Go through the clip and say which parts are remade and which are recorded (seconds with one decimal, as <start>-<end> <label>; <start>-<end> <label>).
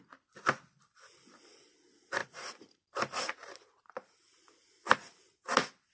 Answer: 0.0-2.2 recorded; 2.2-2.8 remade; 2.8-3.4 recorded; 3.4-4.2 remade; 4.2-5.9 recorded